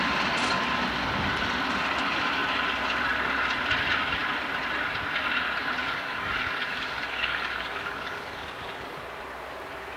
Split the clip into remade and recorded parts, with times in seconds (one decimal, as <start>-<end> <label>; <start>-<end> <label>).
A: 0.0-5.8 recorded; 5.8-9.0 remade; 9.0-10.0 recorded